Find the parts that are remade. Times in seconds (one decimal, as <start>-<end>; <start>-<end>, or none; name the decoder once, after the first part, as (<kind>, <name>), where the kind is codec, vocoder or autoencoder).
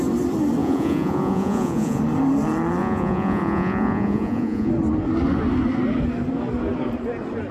0.6-2.0 (vocoder, Vocos); 2.8-4.7